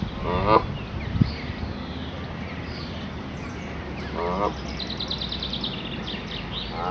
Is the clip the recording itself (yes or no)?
yes